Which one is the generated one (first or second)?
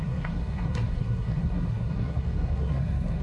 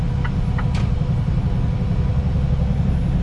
first